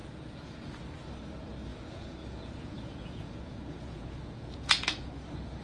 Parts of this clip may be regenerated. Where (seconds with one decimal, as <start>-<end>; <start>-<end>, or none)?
0.0-0.8; 1.7-5.1